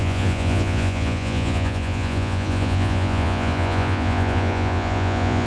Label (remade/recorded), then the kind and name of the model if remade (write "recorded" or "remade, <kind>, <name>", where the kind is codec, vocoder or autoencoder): remade, vocoder, Vocos